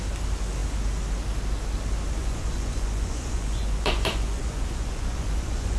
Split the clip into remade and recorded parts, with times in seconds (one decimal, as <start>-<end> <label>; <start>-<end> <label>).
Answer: 0.0-2.2 recorded; 2.2-5.8 remade